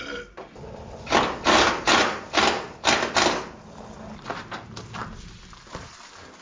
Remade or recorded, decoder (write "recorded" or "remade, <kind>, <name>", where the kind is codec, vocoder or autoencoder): recorded